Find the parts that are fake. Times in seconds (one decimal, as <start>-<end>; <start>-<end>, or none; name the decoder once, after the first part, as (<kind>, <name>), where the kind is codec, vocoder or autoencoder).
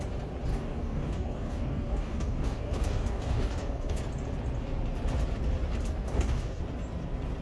0.5-4.0 (codec, DAC); 6.0-6.6